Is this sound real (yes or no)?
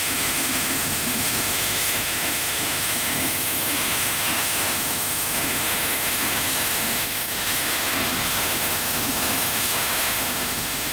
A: no